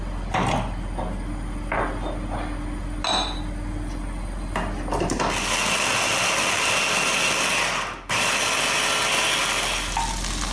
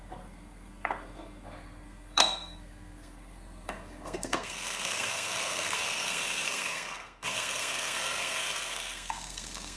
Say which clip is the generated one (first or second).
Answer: second